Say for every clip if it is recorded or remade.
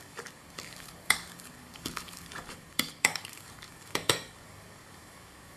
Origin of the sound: remade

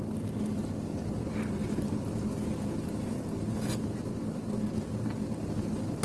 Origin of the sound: recorded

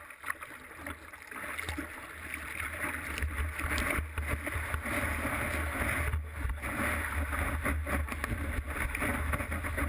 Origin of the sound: recorded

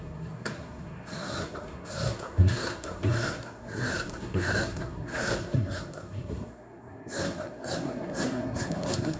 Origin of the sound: remade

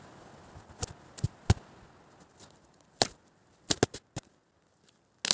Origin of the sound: recorded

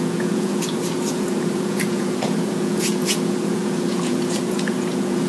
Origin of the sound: remade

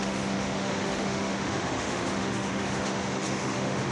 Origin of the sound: remade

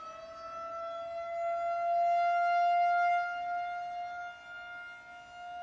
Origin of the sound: recorded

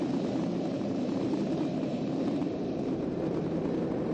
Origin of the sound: remade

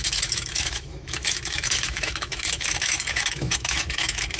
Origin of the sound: remade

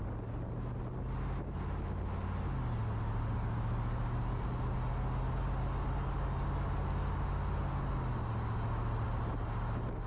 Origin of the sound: recorded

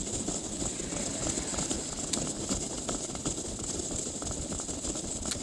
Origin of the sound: recorded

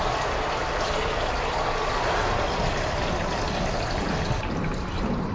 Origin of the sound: remade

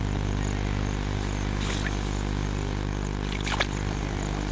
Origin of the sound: recorded